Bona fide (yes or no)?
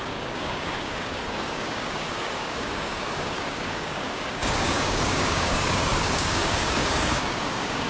no